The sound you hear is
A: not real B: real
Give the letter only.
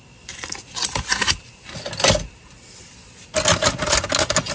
B